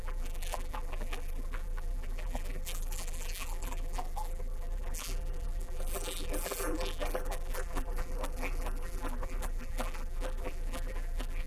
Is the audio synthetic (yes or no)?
yes